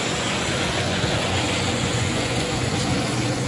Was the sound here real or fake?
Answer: fake